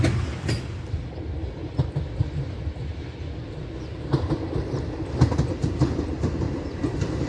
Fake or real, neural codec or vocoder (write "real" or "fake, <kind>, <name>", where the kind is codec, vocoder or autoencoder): real